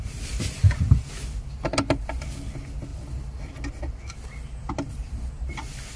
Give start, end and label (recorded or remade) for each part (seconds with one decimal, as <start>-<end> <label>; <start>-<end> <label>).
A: 0.0-6.0 recorded